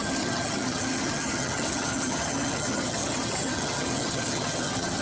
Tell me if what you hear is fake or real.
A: fake